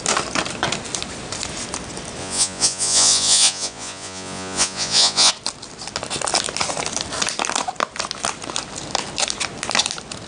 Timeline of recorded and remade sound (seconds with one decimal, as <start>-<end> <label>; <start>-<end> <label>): 0.0-2.2 recorded; 2.2-5.3 remade; 5.3-10.3 recorded